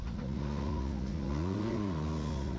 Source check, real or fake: fake